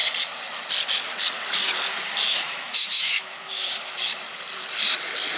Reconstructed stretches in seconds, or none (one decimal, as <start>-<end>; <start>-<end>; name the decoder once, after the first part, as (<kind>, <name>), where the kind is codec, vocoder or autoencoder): 2.3-3.9 (autoencoder, DAC-VAE)